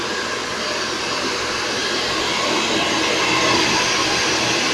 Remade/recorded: recorded